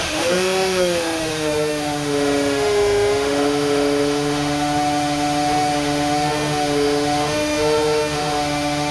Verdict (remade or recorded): remade